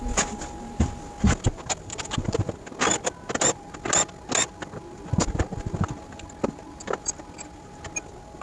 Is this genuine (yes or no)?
yes